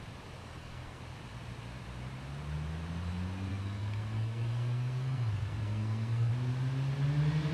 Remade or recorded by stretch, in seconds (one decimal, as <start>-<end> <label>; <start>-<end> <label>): 0.0-0.4 recorded; 0.4-1.0 remade; 1.0-3.5 recorded; 3.5-6.3 remade; 6.3-7.5 recorded